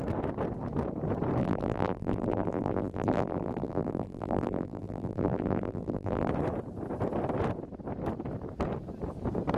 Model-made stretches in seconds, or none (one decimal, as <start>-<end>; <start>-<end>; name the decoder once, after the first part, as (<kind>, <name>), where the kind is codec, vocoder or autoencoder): 1.4-6.3 (vocoder, BigVGAN v2)

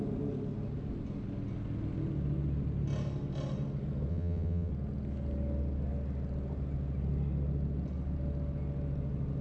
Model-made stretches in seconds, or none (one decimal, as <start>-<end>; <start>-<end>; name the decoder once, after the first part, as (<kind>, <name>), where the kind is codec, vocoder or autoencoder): 4.1-4.7 (vocoder, WaveNeXt)

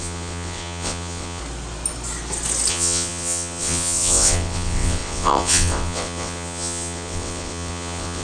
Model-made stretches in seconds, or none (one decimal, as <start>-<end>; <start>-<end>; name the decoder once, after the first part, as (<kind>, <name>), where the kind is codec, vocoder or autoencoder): 0.0-1.4 (vocoder, WaveNeXt); 2.7-8.2

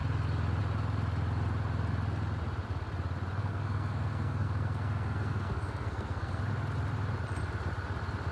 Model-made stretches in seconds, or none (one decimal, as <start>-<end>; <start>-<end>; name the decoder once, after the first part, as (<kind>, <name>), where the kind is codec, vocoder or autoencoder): 3.4-6.4 (codec, SNAC)

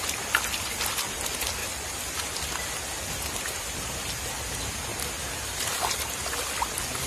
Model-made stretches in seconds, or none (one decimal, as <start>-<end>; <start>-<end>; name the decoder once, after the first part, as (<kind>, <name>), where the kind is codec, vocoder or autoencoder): none

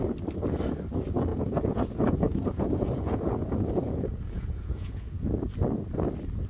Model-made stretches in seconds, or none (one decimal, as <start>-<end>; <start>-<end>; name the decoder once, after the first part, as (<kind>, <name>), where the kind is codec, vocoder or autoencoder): 1.3-5.2 (vocoder, Vocos)

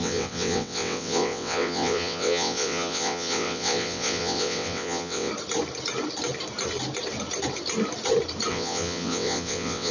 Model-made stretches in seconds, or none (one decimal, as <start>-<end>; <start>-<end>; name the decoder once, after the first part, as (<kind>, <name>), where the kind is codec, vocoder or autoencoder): 0.0-5.3 (vocoder, WaveNeXt); 8.5-9.9